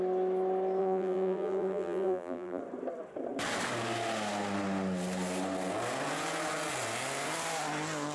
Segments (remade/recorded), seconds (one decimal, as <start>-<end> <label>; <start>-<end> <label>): 0.0-0.8 recorded; 0.8-2.6 remade; 2.6-8.1 recorded